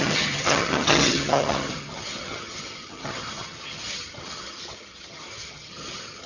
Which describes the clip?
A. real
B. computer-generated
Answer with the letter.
B